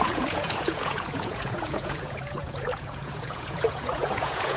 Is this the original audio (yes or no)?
no